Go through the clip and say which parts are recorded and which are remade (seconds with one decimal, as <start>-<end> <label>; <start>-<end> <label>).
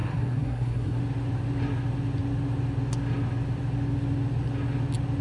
0.0-1.0 remade; 1.0-5.2 recorded